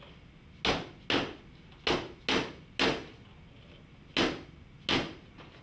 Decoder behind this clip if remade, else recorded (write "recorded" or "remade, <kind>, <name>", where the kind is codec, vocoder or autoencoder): recorded